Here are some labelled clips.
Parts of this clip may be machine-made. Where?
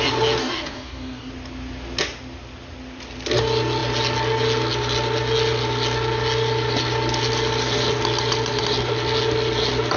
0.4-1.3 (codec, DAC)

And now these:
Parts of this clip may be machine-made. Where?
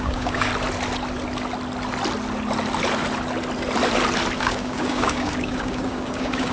0.0-0.5 (codec, DAC); 4.4-6.5